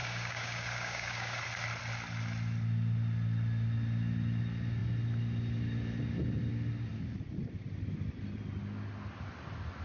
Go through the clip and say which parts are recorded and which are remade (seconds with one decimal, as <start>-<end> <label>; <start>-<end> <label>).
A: 0.0-1.4 remade; 1.4-9.8 recorded